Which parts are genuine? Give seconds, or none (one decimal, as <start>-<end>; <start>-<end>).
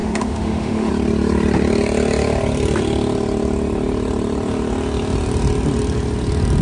0.9-6.6